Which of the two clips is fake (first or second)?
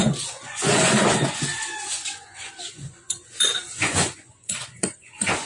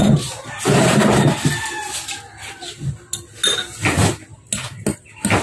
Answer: first